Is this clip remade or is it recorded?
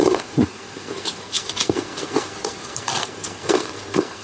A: remade